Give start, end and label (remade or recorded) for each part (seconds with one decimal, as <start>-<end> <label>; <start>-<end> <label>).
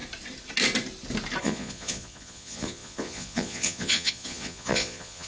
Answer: 0.0-1.4 recorded; 1.4-5.3 remade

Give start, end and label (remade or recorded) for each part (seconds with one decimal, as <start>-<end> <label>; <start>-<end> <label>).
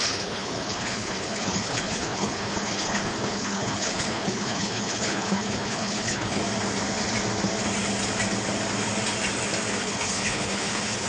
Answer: 0.0-6.4 remade; 6.4-9.8 recorded; 9.8-11.1 remade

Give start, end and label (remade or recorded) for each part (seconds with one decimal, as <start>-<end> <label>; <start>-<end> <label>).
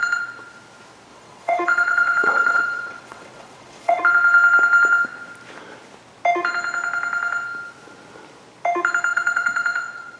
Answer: 0.0-1.1 recorded; 1.1-4.0 remade; 4.0-9.1 recorded; 9.1-10.2 remade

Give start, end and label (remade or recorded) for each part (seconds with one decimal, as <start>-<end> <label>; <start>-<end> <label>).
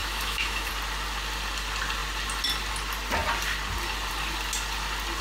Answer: 0.0-0.7 remade; 0.7-5.2 recorded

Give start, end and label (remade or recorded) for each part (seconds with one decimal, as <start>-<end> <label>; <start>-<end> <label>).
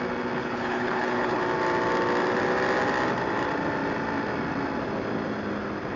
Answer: 0.0-0.4 recorded; 0.4-1.4 remade; 1.4-6.0 recorded